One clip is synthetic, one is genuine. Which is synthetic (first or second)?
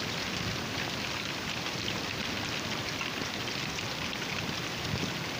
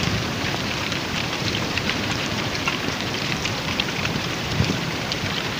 second